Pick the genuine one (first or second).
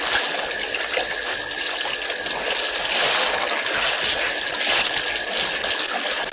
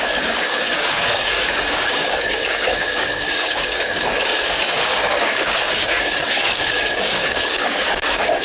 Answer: first